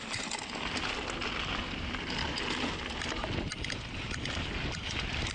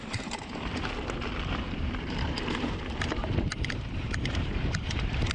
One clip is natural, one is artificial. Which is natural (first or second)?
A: first